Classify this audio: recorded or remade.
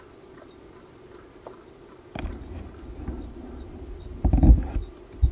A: remade